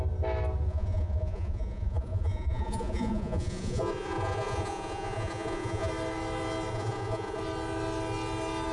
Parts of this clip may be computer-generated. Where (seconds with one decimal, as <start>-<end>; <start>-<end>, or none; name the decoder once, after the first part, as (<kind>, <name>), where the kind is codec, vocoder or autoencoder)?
0.7-5.9 (vocoder, Vocos); 6.7-7.4

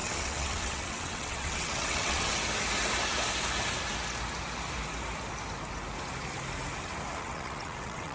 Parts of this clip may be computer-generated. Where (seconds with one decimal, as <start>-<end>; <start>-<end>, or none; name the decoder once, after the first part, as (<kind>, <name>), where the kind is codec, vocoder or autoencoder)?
0.0-2.3 (vocoder, WaveNeXt); 7.2-8.1

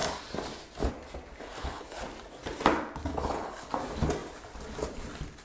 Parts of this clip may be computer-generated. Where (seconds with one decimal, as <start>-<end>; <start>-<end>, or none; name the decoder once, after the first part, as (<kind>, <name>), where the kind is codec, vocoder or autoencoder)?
1.4-2.0 (codec, HILCodec); 3.1-3.7